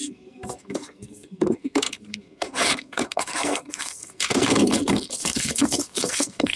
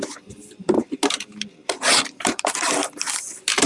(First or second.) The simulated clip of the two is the first